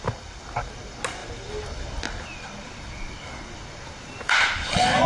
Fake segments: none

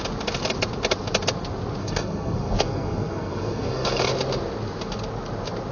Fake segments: 1.8-4.1